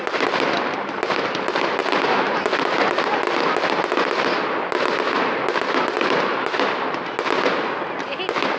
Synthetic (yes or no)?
no